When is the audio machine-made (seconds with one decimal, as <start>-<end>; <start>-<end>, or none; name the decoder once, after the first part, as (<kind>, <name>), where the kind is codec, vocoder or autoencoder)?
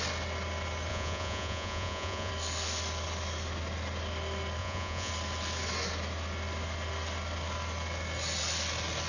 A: 0.9-2.3 (vocoder, Vocos); 4.6-5.1